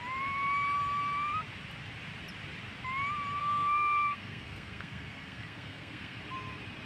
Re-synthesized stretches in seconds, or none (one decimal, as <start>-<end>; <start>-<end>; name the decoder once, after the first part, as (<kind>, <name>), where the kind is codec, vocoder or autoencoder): 3.4-6.2 (codec, SNAC)